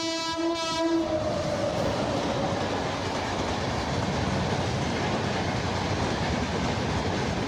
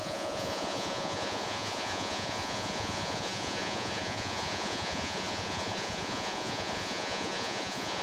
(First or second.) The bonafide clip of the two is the first